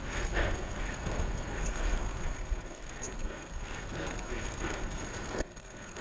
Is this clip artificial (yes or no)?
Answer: yes